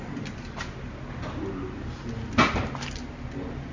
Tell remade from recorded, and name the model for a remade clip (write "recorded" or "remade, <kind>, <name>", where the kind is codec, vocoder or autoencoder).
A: recorded